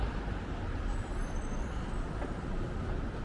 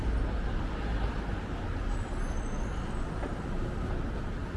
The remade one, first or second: first